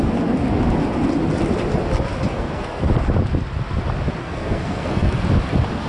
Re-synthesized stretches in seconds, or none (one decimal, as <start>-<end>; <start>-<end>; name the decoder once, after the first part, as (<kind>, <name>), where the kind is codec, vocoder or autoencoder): 2.3-2.9 (codec, SNAC); 4.2-5.2